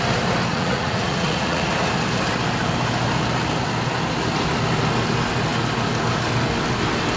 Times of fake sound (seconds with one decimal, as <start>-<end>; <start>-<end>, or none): 0.5-1.7